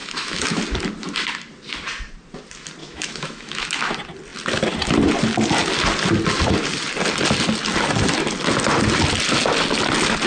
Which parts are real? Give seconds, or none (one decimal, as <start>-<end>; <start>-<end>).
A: 0.6-2.8; 3.8-10.3